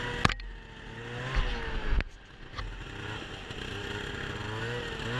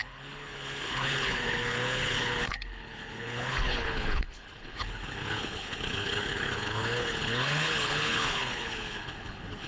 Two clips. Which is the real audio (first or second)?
first